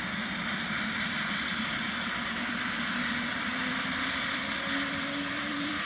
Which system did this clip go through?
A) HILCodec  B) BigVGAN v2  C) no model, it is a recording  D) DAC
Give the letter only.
B